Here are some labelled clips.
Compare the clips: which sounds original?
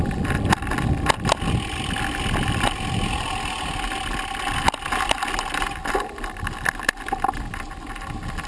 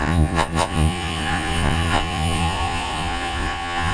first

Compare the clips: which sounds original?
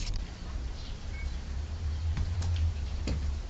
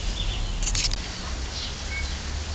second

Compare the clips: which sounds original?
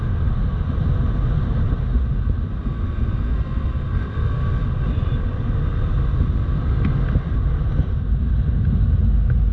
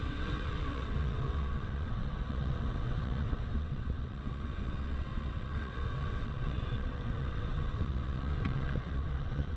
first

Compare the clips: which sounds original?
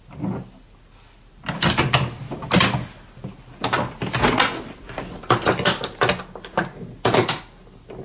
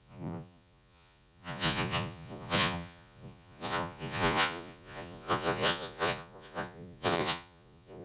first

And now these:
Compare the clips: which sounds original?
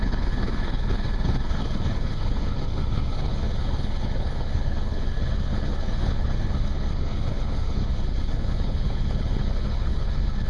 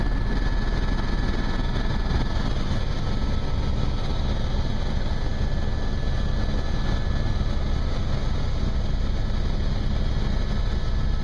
second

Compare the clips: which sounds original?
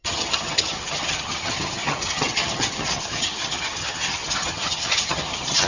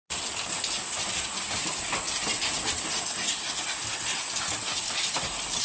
second